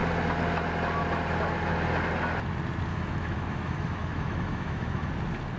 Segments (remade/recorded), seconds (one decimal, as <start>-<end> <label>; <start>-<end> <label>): 0.0-2.9 recorded; 2.9-5.1 remade; 5.1-5.6 recorded